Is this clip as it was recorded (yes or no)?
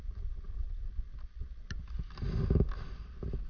yes